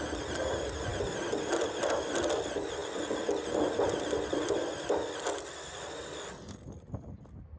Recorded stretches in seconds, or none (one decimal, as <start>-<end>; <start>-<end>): 0.0-7.6